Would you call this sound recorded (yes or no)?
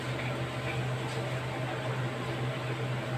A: yes